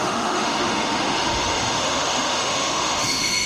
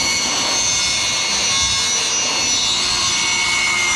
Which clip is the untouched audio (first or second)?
second